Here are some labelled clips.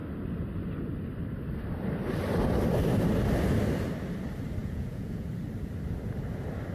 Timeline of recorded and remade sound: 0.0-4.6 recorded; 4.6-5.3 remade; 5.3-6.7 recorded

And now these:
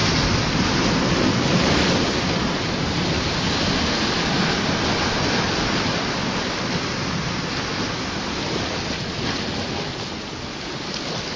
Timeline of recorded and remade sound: 0.0-11.4 recorded

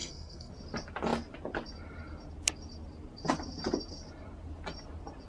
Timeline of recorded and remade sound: 0.0-0.5 remade; 0.5-5.3 recorded

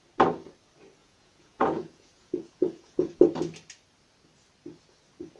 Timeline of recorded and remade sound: 0.0-1.0 recorded; 1.0-3.2 remade; 3.2-5.4 recorded

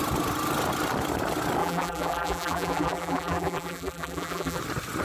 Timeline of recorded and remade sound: 0.0-1.6 recorded; 1.6-4.6 remade; 4.6-5.0 recorded

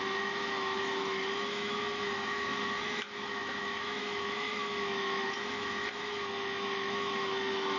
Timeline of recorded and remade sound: 0.0-7.8 remade